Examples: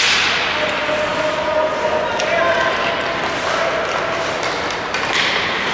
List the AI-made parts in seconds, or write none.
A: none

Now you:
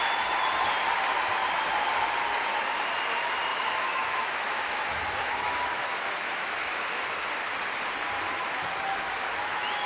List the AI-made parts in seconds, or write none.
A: 3.5-7.0 (autoencoder, DAC-VAE)